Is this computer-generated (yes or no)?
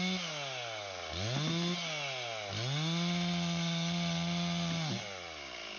no